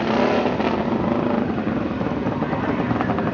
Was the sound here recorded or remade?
recorded